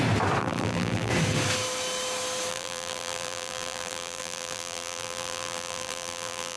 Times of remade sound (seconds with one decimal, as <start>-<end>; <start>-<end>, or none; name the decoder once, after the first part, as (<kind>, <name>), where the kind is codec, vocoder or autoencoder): 0.4-1.1 (vocoder, BigVGAN v2); 2.5-6.6